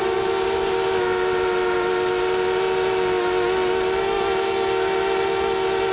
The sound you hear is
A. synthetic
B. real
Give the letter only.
B